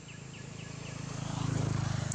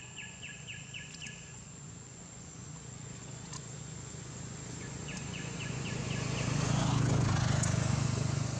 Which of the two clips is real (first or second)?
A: first